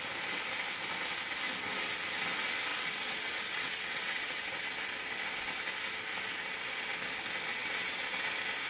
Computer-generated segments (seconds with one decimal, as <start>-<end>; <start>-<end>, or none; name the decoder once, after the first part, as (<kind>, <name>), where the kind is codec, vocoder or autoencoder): 2.7-4.6 (vocoder, WaveNeXt); 7.5-8.0